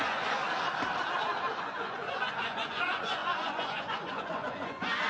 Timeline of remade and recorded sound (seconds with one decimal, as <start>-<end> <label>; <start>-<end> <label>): 0.0-0.4 remade; 0.4-1.6 recorded; 1.6-5.1 remade